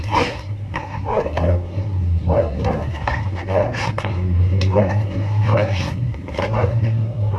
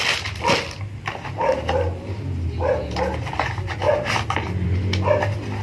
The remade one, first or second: first